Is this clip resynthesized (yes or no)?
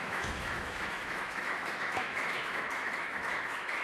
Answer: yes